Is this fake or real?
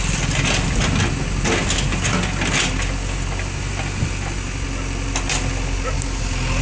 real